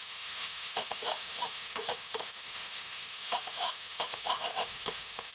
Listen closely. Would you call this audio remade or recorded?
remade